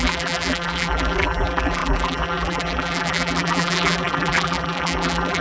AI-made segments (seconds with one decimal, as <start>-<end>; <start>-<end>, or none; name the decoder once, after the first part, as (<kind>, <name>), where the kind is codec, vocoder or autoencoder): 0.0-5.4 (vocoder, BigVGAN v2)